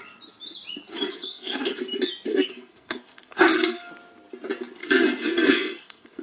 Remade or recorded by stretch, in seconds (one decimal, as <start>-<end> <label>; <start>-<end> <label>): 0.0-1.1 recorded; 1.1-1.8 remade; 1.8-2.3 recorded; 2.3-3.9 remade; 3.9-4.8 recorded; 4.8-6.2 remade